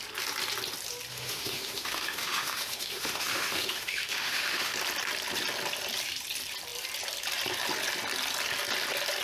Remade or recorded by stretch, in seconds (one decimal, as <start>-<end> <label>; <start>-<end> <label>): 0.0-1.1 recorded; 1.1-4.7 remade; 4.7-9.2 recorded